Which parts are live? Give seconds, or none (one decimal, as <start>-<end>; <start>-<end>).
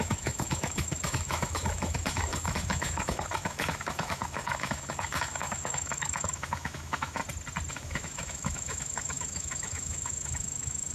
7.2-7.7